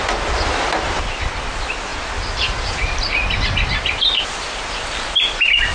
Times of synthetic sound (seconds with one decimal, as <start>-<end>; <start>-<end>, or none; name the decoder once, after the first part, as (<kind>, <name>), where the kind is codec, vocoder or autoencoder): none